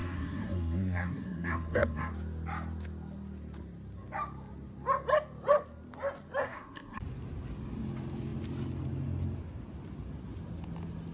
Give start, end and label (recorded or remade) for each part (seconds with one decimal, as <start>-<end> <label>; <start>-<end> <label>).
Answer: 0.0-2.1 remade; 2.1-6.4 recorded; 6.4-7.0 remade; 7.0-11.1 recorded